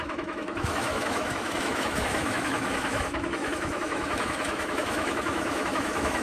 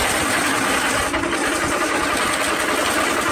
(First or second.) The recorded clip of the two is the second